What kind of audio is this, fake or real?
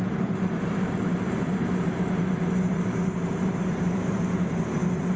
fake